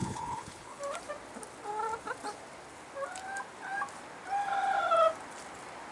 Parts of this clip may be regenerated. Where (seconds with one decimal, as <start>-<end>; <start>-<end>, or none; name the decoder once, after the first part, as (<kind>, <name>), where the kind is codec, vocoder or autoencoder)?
0.0-0.8 (codec, HILCodec)